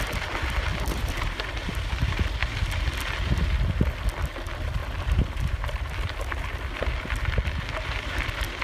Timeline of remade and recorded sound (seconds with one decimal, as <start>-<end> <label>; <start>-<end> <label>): 0.0-0.7 recorded; 0.7-2.0 remade; 2.0-4.8 recorded; 4.8-8.6 remade